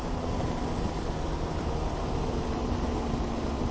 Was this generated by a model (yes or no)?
no